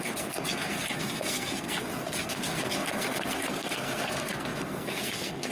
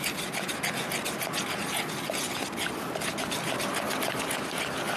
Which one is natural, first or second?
second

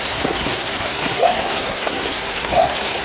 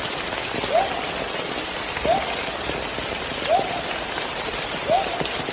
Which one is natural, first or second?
second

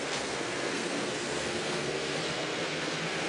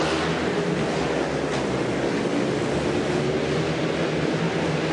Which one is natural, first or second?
second